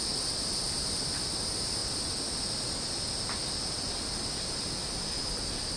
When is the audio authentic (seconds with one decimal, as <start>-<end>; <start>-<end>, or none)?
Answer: 0.0-5.8

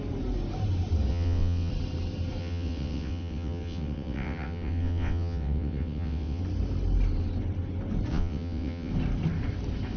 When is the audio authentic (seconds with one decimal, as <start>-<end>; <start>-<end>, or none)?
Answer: 0.0-1.1; 1.7-2.4; 6.4-8.1; 8.9-10.0

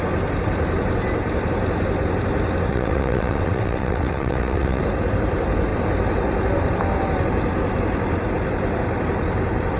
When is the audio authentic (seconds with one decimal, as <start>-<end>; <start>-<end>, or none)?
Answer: 0.0-2.7; 4.8-9.8

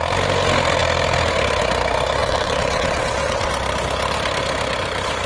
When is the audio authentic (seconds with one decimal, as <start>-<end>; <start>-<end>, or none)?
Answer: 0.0-2.2; 3.5-5.3

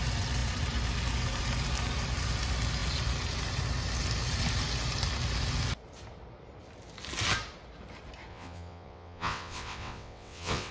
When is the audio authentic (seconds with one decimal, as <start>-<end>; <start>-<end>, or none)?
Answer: 0.0-8.3

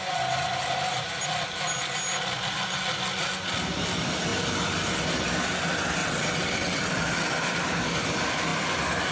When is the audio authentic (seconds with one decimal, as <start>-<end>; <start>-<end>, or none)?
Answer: 0.0-6.0; 6.9-9.1

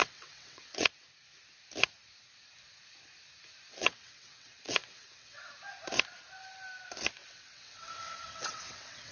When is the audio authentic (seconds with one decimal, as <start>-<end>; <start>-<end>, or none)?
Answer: 0.9-3.7; 5.5-7.2

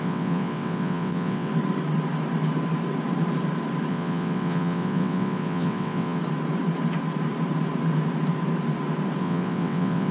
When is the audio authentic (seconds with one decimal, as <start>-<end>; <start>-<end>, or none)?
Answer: 1.5-3.9; 6.2-9.2